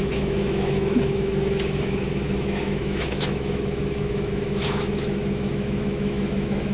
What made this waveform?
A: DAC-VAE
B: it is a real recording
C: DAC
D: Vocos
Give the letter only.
A